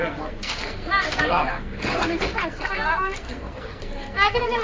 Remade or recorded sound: remade